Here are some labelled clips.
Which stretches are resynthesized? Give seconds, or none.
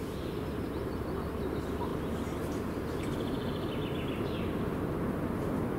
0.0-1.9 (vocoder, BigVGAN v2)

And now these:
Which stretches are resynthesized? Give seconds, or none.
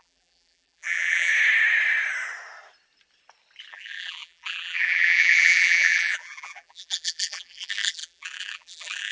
0.0-1.3 (vocoder, BigVGAN v2); 3.7-9.1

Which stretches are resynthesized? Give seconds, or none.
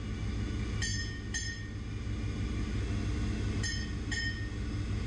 none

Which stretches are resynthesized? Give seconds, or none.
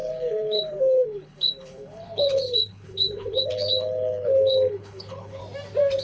0.0-5.4 (codec, HILCodec)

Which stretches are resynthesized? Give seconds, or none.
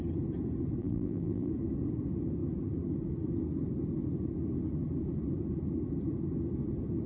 0.8-1.5 (vocoder, BigVGAN v2)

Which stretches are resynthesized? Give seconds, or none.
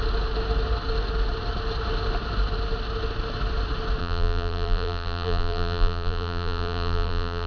4.0-7.5 (vocoder, BigVGAN v2)